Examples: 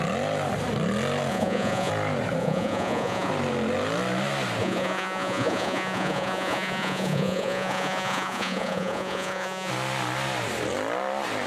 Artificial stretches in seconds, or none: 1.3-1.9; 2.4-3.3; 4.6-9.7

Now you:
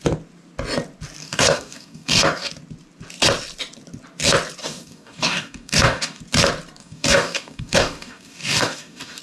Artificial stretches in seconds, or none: 1.2-2.5; 4.6-6.2; 6.8-9.2

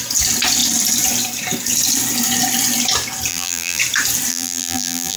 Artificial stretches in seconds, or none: 3.3-3.8; 4.3-5.2

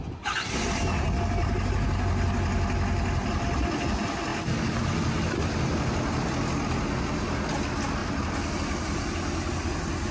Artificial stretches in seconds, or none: none

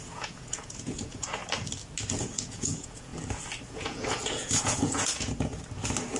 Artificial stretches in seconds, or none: 0.0-1.4; 2.2-3.1; 3.7-5.5

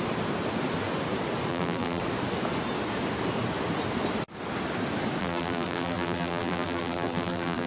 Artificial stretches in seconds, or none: 1.5-2.0; 5.2-7.7

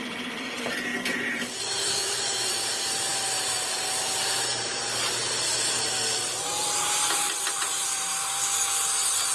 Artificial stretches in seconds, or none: 0.0-0.9; 1.6-8.4

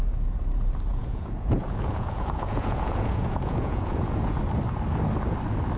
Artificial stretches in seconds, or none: 0.9-4.4